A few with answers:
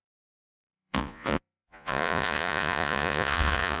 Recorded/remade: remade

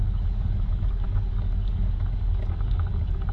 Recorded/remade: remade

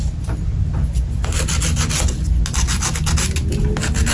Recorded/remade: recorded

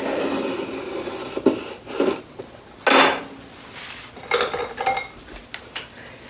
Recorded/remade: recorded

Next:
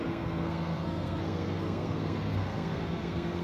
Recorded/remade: remade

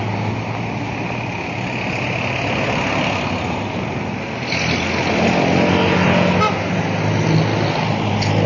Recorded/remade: recorded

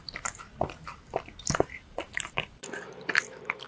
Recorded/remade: remade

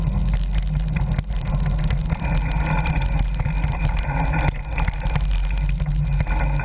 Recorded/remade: recorded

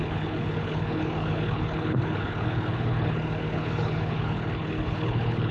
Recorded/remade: remade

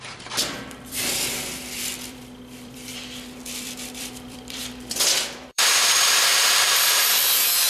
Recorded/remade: remade